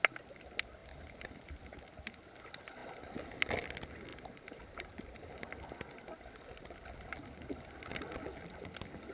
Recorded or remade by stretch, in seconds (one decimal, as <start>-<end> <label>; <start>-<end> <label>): 0.0-0.8 recorded; 0.8-1.8 remade; 1.8-4.1 recorded; 4.1-5.2 remade; 5.2-9.1 recorded